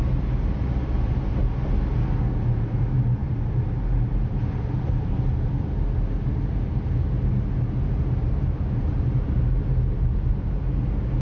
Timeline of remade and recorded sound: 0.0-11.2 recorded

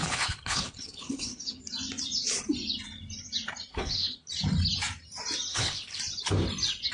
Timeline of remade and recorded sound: 0.0-1.6 remade; 1.6-3.7 recorded; 3.7-4.3 remade; 4.3-5.5 recorded; 5.5-6.0 remade; 6.0-6.9 recorded